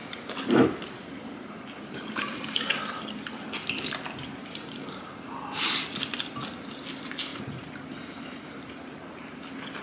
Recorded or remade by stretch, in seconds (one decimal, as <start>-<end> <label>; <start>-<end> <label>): 0.0-2.7 remade; 2.7-4.4 recorded; 4.4-5.2 remade; 5.2-7.3 recorded; 7.3-8.5 remade; 8.5-9.8 recorded